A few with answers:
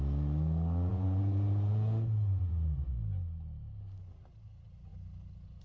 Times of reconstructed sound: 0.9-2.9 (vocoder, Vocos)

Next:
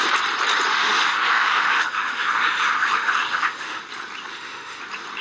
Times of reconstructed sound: 0.7-3.8 (autoencoder, DAC-VAE); 4.3-4.8

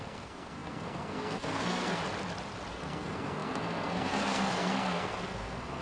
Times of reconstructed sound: 0.0-2.0 (codec, SNAC); 2.7-5.8

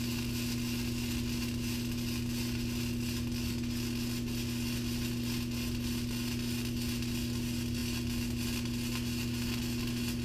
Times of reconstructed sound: none